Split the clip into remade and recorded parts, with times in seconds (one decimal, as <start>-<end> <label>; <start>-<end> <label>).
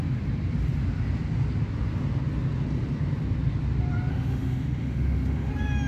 0.0-4.1 recorded; 4.1-5.5 remade; 5.5-5.9 recorded